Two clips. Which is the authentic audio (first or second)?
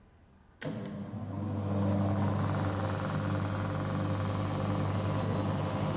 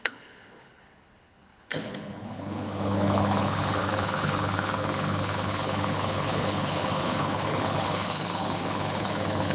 first